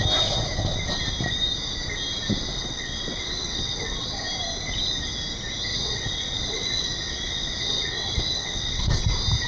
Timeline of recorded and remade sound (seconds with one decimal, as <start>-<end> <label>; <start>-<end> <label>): 0.0-2.5 recorded; 2.5-4.2 remade; 4.2-5.7 recorded; 5.7-8.9 remade; 8.9-9.5 recorded